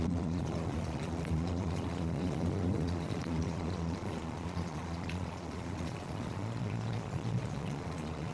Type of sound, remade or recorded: remade